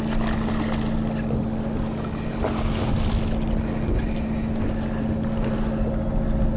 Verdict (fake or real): real